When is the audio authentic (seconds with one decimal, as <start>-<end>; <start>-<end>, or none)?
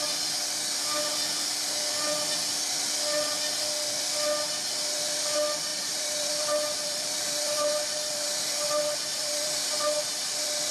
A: 0.0-5.7; 10.0-10.7